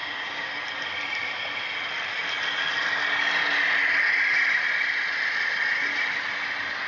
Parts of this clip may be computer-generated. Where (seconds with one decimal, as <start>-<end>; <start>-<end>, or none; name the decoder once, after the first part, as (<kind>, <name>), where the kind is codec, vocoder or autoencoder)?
0.0-0.5 (codec, DAC)